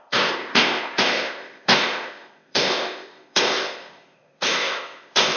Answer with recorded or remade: remade